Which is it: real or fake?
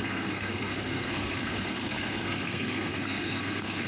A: fake